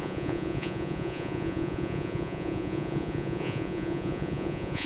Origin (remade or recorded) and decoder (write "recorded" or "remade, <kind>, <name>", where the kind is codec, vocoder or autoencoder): remade, vocoder, Vocos